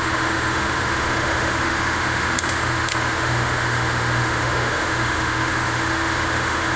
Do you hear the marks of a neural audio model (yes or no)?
yes